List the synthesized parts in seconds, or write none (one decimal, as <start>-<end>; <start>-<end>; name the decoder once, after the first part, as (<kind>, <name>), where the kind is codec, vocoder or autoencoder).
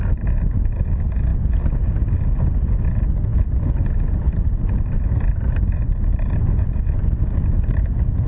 none